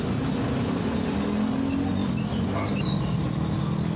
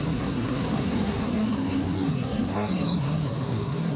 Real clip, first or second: first